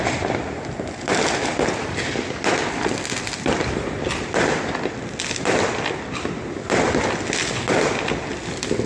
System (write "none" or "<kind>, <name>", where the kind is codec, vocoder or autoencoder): none